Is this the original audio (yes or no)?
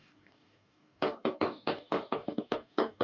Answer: no